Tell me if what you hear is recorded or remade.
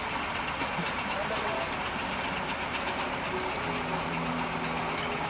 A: recorded